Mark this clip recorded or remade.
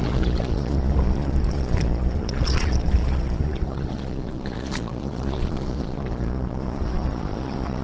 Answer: remade